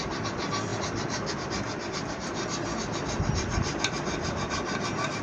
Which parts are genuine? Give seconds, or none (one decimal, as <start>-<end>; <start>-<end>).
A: 0.0-5.2